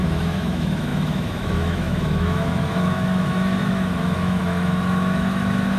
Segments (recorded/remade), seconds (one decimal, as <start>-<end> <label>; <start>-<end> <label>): 0.0-5.8 remade

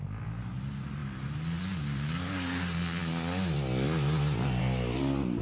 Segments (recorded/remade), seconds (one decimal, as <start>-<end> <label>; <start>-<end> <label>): 0.0-5.4 recorded

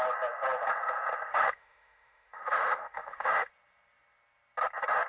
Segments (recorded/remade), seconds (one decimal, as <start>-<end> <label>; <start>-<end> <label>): 0.0-1.3 recorded; 1.3-3.5 remade; 3.5-5.1 recorded